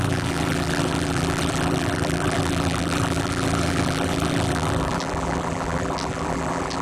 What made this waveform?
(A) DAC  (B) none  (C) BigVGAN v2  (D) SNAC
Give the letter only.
C